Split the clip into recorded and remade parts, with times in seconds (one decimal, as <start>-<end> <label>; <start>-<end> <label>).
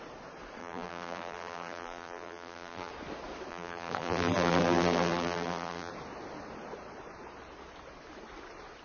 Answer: 0.0-0.6 recorded; 0.6-2.9 remade; 2.9-3.5 recorded; 3.5-5.9 remade; 5.9-8.8 recorded